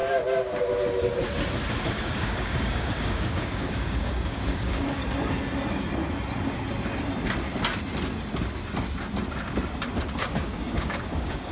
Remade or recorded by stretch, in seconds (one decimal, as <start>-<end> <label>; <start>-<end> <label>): 0.0-1.7 recorded; 1.7-5.0 remade; 5.0-10.2 recorded; 10.2-11.5 remade